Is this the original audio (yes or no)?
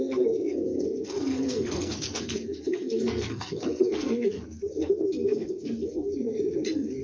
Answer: no